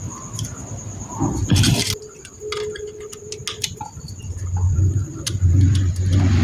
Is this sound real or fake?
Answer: real